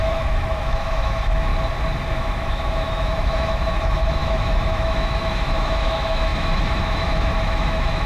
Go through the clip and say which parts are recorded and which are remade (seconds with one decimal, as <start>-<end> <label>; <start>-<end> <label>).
0.0-1.5 remade; 1.5-2.1 recorded; 2.1-8.1 remade